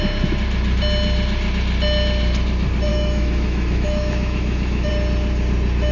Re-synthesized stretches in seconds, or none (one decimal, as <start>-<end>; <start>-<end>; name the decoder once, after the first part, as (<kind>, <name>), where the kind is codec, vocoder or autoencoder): 2.9-4.9 (autoencoder, DAC-VAE)